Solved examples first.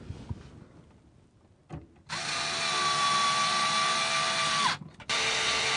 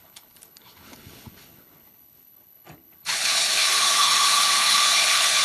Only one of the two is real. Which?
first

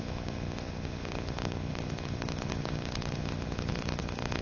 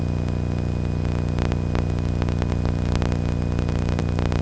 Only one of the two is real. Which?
second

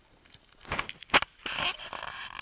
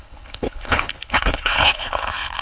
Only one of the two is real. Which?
first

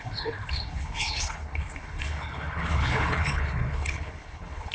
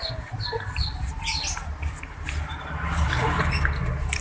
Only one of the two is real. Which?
second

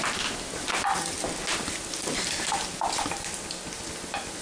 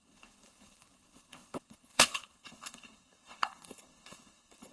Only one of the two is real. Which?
first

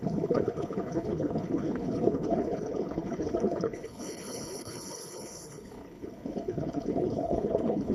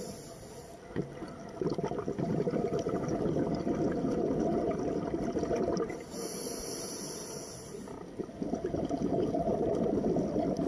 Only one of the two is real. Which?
second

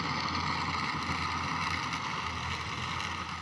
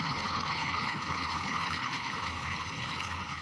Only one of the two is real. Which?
first